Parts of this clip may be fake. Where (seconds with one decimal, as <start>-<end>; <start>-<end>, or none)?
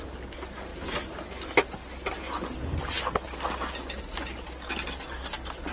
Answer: none